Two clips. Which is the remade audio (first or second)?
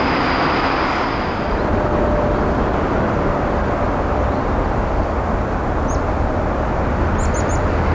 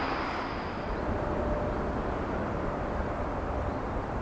second